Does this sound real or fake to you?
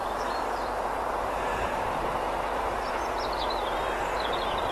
fake